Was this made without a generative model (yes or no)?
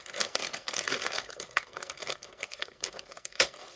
no